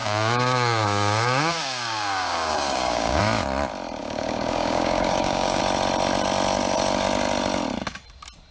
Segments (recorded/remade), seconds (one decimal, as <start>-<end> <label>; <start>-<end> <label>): 0.0-3.2 remade; 3.2-4.0 recorded; 4.0-5.6 remade; 5.6-8.5 recorded